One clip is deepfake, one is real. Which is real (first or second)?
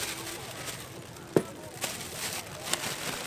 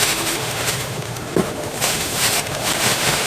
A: first